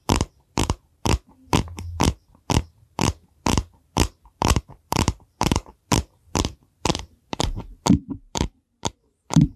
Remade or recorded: remade